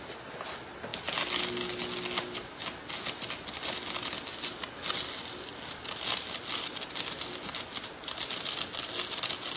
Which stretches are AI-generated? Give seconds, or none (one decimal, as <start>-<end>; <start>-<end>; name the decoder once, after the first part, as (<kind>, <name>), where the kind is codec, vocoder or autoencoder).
none